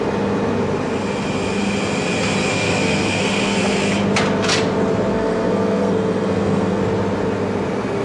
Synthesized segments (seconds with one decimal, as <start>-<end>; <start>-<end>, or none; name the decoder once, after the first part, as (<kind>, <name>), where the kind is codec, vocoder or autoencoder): 2.5-3.9 (codec, SNAC); 5.1-6.8